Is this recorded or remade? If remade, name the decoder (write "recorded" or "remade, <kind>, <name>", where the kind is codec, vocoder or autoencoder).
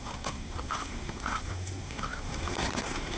remade, codec, SNAC